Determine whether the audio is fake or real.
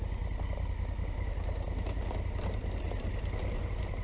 real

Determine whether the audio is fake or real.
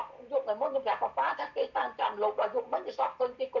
real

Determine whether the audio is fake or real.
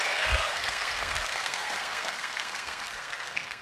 fake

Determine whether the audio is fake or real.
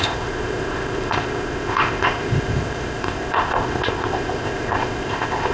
fake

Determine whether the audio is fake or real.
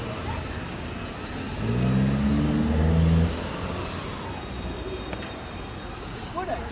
real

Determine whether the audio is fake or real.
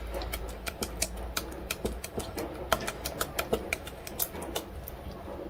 real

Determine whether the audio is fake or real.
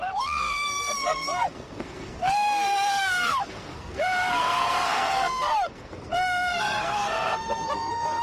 fake